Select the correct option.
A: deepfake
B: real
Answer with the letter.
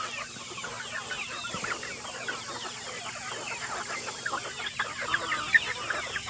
B